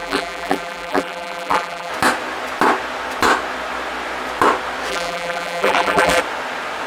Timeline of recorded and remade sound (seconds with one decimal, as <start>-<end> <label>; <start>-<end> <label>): 0.0-1.9 remade; 1.9-4.9 recorded; 4.9-6.2 remade; 6.2-6.9 recorded